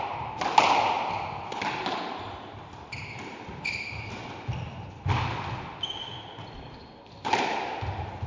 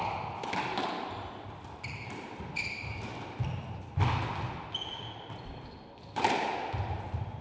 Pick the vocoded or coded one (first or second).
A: first